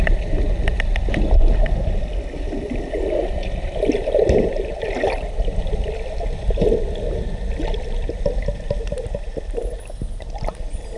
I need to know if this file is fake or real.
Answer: real